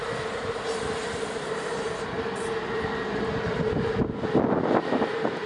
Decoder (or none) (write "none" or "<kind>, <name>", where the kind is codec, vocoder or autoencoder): none